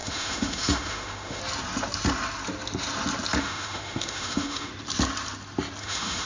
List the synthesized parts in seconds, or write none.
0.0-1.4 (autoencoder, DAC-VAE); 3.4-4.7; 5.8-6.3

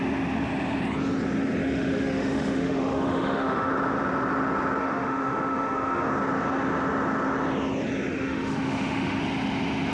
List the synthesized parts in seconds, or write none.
1.6-3.7 (autoencoder, DAC-VAE); 4.8-6.1; 8.1-9.2

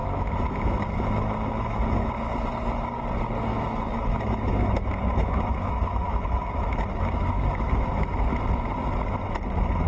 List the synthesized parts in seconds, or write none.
0.0-2.1 (autoencoder, DAC-VAE); 3.5-7.9

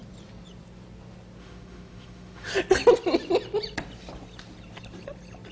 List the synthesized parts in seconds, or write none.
1.4-2.5 (autoencoder, DAC-VAE)